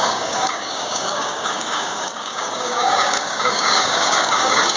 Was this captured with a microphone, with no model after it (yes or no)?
no